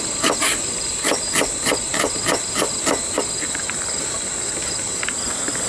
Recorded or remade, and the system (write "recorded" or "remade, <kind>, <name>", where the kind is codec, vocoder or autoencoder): recorded